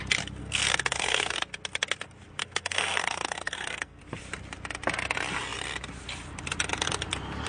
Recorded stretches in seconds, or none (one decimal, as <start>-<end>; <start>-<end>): 0.0-0.4; 1.4-2.4; 4.0-7.5